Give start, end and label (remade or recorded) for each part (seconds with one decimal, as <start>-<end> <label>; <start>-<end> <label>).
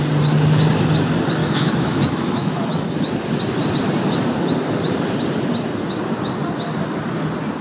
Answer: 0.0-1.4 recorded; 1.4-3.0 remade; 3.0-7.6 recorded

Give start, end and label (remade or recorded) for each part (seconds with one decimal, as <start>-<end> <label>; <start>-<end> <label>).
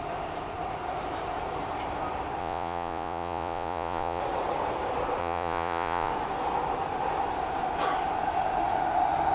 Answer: 0.0-2.4 recorded; 2.4-4.2 remade; 4.2-5.2 recorded; 5.2-6.1 remade; 6.1-9.3 recorded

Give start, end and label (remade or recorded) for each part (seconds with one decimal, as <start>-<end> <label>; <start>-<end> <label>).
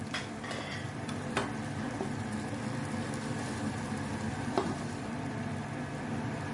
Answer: 0.0-1.4 remade; 1.4-3.0 recorded; 3.0-6.5 remade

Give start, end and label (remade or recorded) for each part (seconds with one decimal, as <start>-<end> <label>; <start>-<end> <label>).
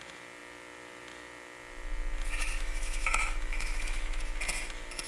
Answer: 0.0-2.4 recorded; 2.4-4.2 remade; 4.2-5.1 recorded